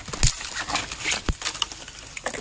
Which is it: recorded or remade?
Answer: recorded